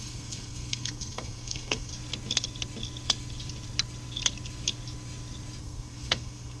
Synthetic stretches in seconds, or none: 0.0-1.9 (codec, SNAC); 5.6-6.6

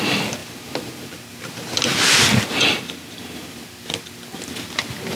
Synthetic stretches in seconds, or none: none

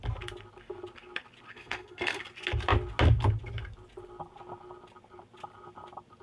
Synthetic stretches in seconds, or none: 1.5-2.2 (codec, SNAC)

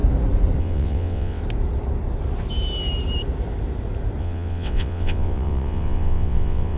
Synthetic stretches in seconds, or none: 0.6-1.4 (vocoder, WaveNeXt); 4.2-6.8

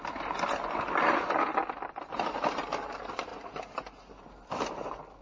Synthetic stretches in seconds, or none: none

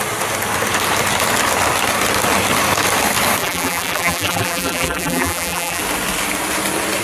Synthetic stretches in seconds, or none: 3.4-5.8 (vocoder, BigVGAN v2)

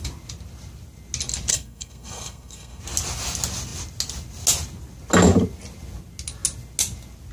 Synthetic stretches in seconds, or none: 1.5-2.8 (codec, SNAC)

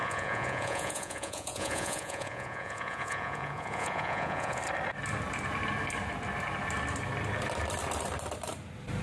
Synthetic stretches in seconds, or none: 0.0-4.6 (vocoder, Vocos)